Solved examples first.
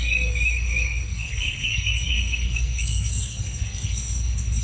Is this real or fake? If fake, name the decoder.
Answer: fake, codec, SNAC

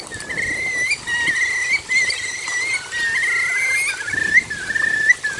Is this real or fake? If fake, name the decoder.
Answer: real